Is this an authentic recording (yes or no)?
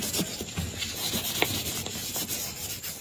yes